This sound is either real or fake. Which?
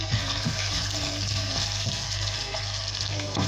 fake